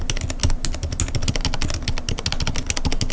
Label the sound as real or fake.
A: real